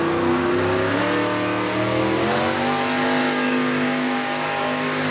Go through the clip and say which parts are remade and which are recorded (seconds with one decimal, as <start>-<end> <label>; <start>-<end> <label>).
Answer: 0.0-0.4 recorded; 0.4-1.0 remade; 1.0-3.2 recorded; 3.2-5.1 remade